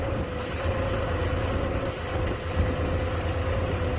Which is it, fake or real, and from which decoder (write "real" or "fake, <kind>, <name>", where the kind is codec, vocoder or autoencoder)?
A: real